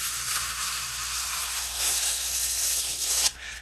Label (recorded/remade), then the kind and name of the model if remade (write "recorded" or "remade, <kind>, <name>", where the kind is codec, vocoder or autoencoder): remade, codec, SNAC